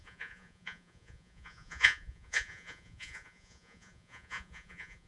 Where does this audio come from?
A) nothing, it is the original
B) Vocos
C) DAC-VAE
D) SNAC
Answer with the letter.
B